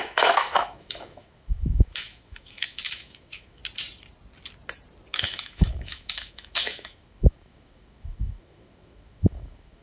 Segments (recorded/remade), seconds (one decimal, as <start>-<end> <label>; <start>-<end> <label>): 0.0-3.6 remade; 3.6-5.1 recorded; 5.1-9.8 remade